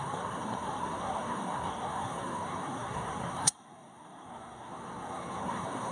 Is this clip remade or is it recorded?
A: remade